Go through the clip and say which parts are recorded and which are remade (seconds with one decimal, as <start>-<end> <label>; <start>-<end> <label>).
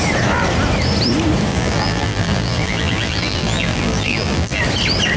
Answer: 0.0-1.5 recorded; 1.5-4.6 remade; 4.6-5.2 recorded